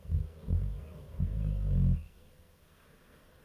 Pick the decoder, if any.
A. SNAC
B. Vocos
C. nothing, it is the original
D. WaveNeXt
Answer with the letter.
A